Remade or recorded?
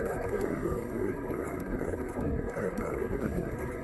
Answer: remade